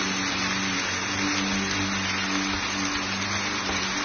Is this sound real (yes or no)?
yes